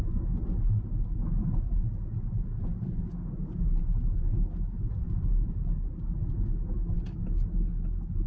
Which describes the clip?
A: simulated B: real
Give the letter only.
B